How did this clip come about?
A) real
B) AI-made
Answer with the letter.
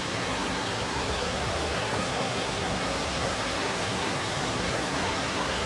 B